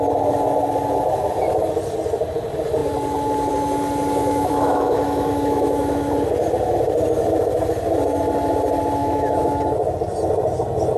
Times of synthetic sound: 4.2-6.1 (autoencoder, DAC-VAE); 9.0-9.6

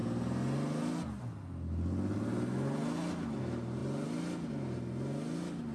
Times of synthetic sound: none

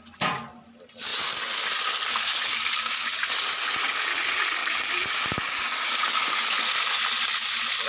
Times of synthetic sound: 4.6-5.6 (vocoder, BigVGAN v2)

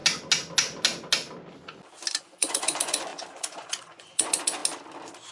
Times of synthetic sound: 2.1-4.6 (vocoder, Vocos)

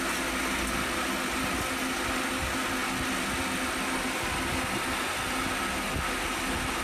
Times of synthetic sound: none